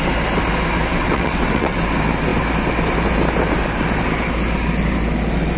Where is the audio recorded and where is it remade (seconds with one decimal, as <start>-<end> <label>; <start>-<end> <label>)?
0.0-0.9 recorded; 0.9-1.8 remade; 1.8-5.6 recorded